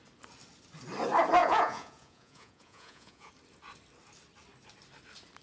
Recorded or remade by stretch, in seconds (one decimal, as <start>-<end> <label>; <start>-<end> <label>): 0.0-1.4 recorded; 1.4-3.3 remade; 3.3-5.4 recorded